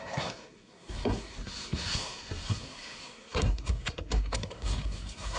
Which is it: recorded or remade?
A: remade